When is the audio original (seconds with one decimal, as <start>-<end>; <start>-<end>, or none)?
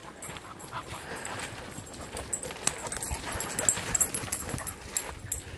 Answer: 0.0-5.6